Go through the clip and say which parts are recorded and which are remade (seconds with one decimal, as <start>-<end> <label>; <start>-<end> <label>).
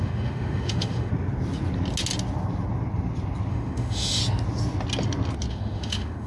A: 0.0-1.1 remade; 1.1-3.5 recorded; 3.5-4.2 remade; 4.2-5.5 recorded; 5.5-6.3 remade